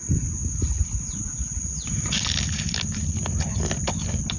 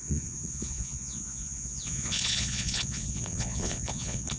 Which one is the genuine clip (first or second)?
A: first